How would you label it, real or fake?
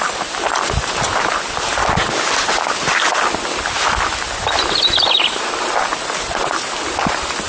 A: real